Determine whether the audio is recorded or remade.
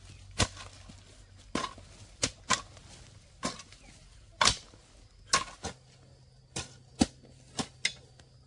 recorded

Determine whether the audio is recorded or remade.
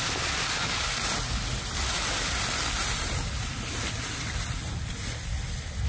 recorded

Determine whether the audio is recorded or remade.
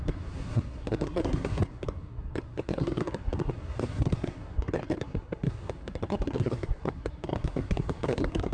remade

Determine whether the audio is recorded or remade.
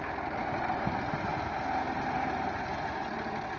recorded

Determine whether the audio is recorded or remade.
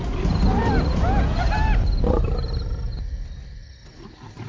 recorded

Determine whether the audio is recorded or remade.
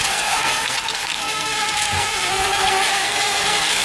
remade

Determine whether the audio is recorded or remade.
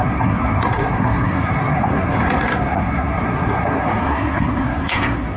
remade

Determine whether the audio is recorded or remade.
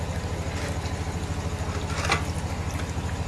recorded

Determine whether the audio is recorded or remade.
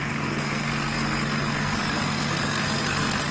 remade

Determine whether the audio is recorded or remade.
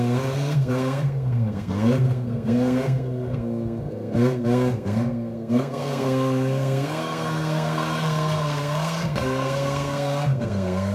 remade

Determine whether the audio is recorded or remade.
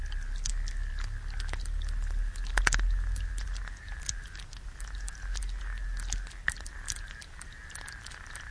recorded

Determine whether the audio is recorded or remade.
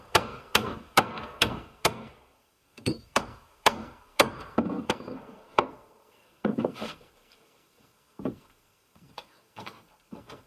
remade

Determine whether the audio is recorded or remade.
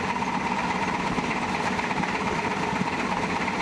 recorded